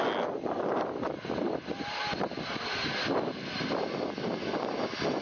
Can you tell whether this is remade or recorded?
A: recorded